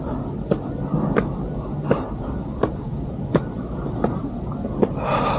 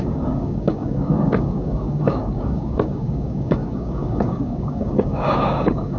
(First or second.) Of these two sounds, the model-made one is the second